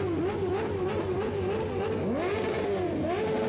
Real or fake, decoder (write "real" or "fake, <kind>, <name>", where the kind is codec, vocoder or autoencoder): real